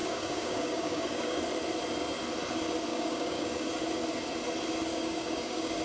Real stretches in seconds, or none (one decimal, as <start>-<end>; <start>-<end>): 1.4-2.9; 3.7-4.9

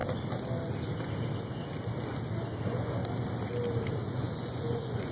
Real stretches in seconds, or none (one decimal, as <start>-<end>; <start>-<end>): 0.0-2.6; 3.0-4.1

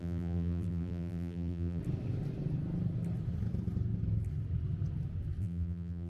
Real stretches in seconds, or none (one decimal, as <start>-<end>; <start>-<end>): 1.8-5.4

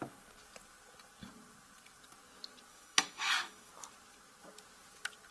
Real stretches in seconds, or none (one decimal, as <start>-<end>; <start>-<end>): 0.0-2.7; 3.7-5.3